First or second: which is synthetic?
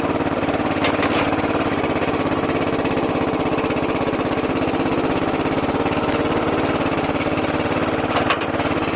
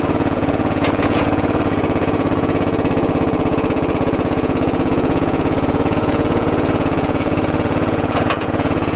second